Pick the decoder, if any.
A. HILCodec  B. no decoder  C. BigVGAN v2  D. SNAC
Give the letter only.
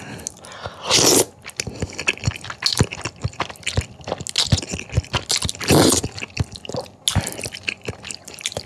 B